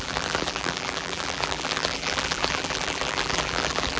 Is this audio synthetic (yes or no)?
yes